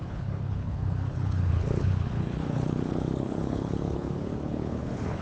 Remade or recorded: remade